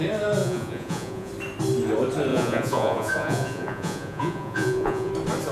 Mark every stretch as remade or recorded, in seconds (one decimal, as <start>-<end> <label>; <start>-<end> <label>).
0.0-0.4 recorded; 0.4-1.3 remade; 1.3-2.3 recorded; 2.3-5.1 remade; 5.1-5.5 recorded